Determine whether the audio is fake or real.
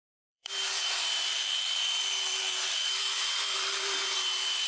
fake